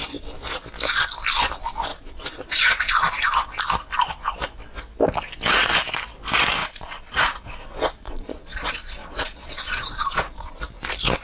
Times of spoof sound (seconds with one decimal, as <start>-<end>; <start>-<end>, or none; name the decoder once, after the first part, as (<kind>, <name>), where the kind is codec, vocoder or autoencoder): 1.9-3.2 (vocoder, Vocos); 6.6-10.6